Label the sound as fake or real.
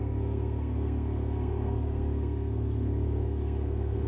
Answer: fake